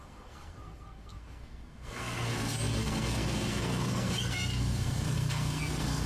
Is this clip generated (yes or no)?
yes